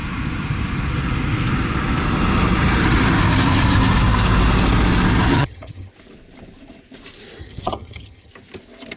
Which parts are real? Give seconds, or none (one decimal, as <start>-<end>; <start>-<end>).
0.0-5.3; 5.9-7.4; 8.3-9.0